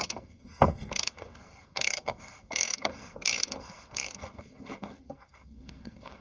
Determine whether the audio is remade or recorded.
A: remade